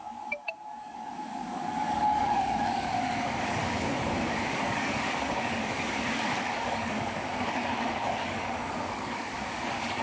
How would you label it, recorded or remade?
remade